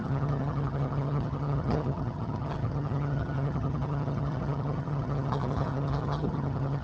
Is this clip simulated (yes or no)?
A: yes